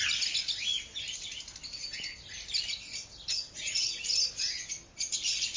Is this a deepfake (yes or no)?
no